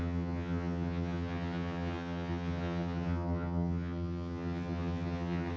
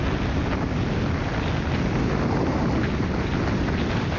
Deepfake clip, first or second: first